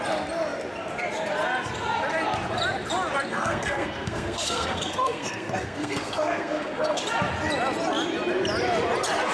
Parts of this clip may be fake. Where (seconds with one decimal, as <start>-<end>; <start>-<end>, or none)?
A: 3.3-7.0